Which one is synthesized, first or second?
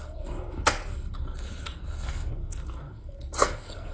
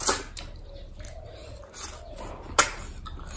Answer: first